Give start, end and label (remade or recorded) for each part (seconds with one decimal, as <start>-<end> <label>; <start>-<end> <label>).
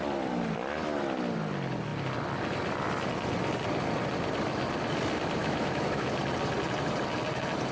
0.0-5.4 recorded; 5.4-6.2 remade; 6.2-7.7 recorded